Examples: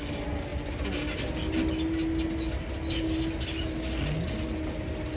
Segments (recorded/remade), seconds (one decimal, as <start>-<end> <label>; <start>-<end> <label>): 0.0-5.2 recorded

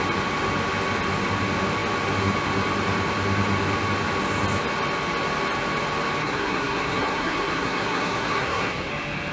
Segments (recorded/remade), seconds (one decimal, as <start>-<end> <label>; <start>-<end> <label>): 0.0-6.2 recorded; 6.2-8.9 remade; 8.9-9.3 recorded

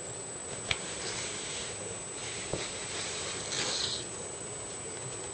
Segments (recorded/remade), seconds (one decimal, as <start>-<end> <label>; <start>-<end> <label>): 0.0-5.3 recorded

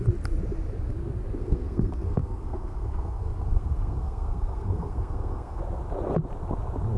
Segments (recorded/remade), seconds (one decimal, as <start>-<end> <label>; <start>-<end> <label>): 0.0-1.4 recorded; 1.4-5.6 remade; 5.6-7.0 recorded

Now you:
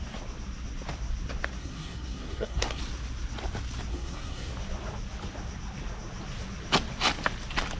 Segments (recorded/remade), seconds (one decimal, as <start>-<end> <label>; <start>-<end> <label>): 0.0-1.6 recorded; 1.6-2.8 remade; 2.8-3.9 recorded; 3.9-4.5 remade; 4.5-7.8 recorded

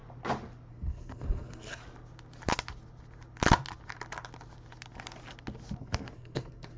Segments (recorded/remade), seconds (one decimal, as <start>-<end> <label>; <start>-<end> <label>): 0.0-0.7 recorded; 0.7-1.8 remade; 1.8-5.8 recorded; 5.8-6.8 remade